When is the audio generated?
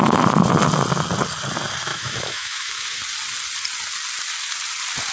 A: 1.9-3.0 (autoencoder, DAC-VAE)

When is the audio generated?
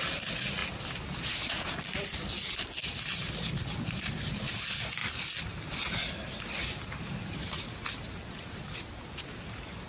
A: none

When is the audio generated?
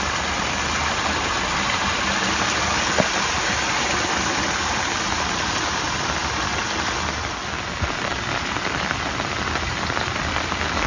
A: none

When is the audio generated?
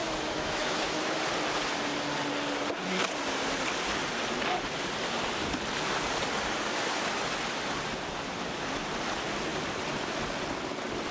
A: 0.0-1.2 (autoencoder, DAC-VAE)